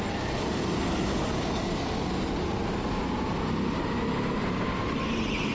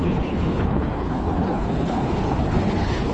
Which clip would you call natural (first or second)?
first